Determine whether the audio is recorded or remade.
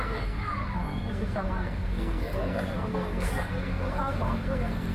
remade